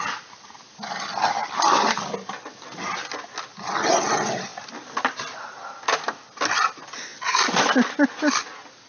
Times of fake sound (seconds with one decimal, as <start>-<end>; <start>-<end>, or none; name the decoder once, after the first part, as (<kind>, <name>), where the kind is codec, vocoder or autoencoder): none